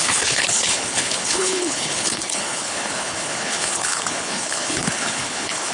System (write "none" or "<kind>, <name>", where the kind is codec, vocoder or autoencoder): codec, HILCodec